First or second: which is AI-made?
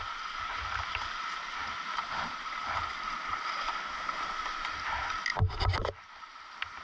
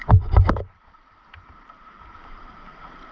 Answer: second